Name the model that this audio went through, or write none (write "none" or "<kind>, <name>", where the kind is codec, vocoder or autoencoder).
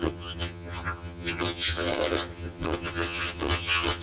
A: vocoder, HiFi-GAN